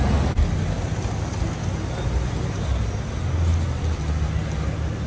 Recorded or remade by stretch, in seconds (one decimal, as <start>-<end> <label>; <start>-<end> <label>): 0.0-5.1 recorded